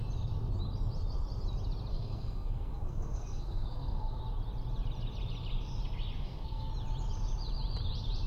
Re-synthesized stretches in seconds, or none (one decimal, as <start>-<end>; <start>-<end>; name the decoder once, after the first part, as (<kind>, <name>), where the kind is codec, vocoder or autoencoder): 1.9-4.2 (codec, SNAC); 6.2-6.7